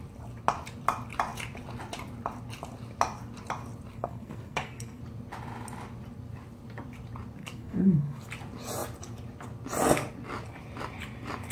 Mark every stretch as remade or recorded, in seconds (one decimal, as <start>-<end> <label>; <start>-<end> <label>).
0.0-3.9 recorded; 3.9-5.0 remade; 5.0-7.4 recorded; 7.4-8.2 remade; 8.2-11.5 recorded